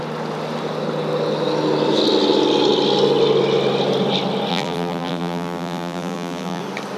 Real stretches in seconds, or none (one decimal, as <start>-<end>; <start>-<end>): 0.0-4.5; 6.6-7.0